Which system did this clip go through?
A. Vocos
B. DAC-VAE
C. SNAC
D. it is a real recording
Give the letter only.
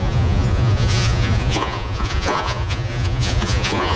A